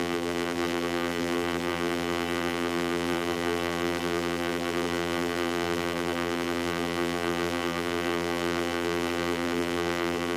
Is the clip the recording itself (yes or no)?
no